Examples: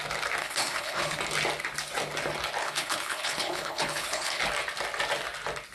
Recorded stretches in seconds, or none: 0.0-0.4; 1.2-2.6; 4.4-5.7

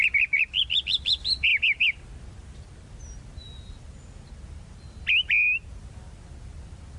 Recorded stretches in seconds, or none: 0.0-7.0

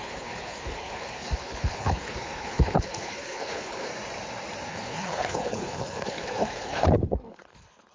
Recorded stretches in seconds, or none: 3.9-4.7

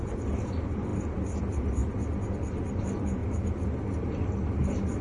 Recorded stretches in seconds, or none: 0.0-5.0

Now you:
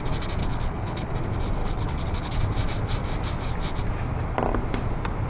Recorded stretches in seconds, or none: 0.0-0.4; 1.1-1.6; 2.4-5.3

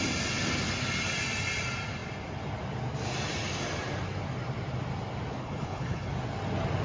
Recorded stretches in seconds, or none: 0.0-5.4; 6.1-6.8

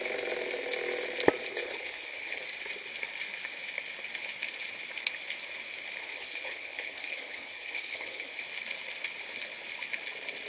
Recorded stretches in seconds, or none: 0.0-1.5; 2.4-6.0; 8.4-10.5